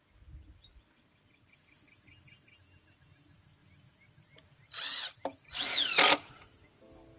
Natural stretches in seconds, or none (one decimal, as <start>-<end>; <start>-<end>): 0.0-7.2